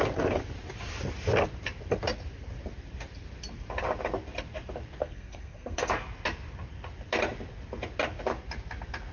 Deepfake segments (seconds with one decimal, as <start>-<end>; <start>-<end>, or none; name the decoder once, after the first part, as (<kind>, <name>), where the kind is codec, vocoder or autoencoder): 5.0-5.9 (codec, SNAC)